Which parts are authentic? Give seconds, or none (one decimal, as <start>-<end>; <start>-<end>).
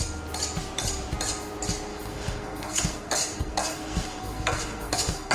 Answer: 0.0-1.9